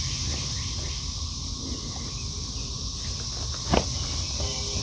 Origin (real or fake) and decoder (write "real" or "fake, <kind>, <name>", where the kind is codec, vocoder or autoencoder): real